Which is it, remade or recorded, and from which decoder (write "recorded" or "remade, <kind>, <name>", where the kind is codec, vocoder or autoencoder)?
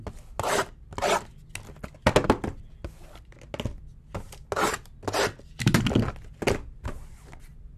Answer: recorded